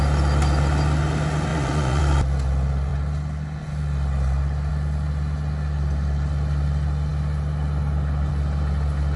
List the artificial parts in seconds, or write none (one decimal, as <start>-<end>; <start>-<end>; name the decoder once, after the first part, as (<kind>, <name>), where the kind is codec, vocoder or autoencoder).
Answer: 1.5-2.0 (vocoder, Vocos)